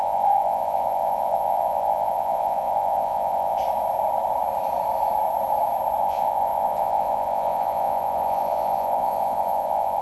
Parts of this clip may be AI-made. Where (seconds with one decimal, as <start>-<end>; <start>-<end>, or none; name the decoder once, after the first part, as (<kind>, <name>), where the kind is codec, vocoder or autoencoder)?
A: 0.0-3.6 (vocoder, Vocos); 6.0-10.0